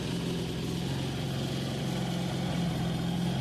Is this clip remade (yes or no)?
no